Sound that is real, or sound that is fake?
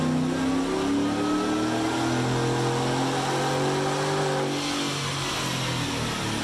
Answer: real